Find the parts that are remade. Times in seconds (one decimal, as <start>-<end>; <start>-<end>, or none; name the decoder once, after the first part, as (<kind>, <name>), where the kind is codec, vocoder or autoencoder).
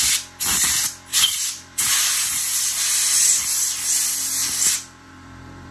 1.1-2.4 (vocoder, BigVGAN v2); 4.4-5.7